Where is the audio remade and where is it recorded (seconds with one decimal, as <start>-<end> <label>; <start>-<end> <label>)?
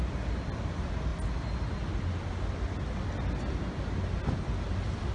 0.0-5.1 recorded